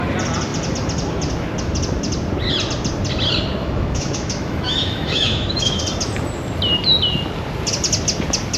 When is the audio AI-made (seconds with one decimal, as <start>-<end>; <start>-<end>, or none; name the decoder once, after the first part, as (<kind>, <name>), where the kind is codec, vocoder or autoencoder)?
3.6-5.8 (autoencoder, DAC-VAE)